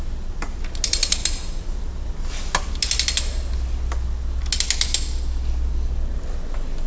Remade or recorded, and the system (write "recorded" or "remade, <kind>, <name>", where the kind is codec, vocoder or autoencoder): recorded